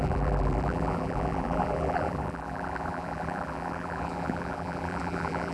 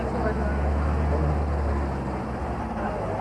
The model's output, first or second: first